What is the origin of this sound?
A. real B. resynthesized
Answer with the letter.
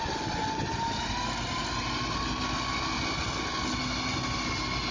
A